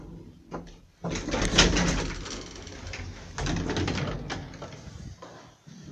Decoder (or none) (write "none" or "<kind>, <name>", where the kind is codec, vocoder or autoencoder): none